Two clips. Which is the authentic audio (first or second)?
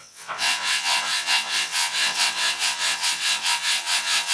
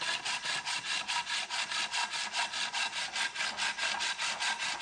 second